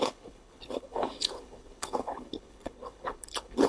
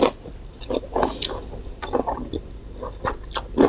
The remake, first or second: first